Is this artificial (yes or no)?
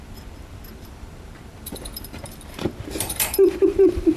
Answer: yes